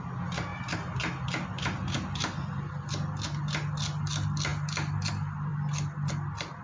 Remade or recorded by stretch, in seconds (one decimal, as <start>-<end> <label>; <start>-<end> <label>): 0.0-6.6 recorded